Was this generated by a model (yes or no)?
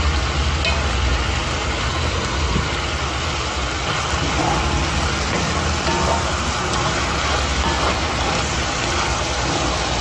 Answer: no